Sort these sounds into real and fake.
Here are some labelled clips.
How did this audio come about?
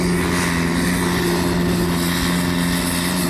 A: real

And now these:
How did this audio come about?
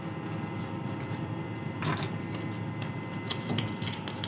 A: real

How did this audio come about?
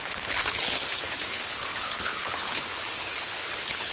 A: fake